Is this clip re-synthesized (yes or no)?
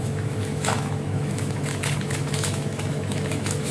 yes